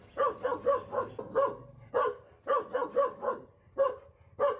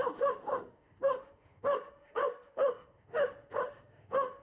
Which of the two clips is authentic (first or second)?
first